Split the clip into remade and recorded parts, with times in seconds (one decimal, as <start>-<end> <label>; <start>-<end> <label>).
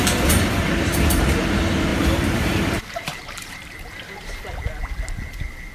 0.0-1.9 recorded; 1.9-4.4 remade; 4.4-5.7 recorded